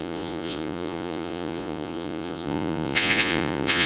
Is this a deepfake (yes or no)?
yes